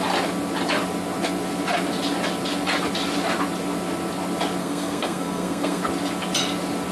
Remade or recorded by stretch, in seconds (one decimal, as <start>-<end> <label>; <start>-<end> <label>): 0.0-4.6 recorded; 4.6-5.8 remade; 5.8-6.9 recorded